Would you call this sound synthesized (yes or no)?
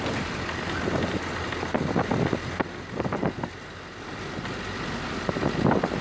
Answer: no